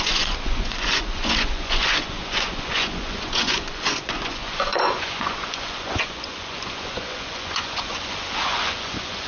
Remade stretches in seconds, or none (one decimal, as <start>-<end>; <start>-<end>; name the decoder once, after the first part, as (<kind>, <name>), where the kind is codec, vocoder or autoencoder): 0.0-9.3 (vocoder, Vocos)